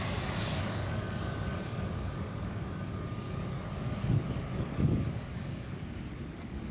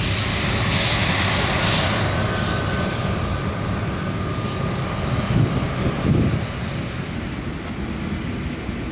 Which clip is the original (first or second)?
second